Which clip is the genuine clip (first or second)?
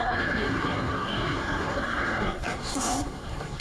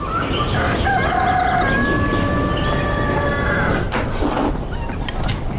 second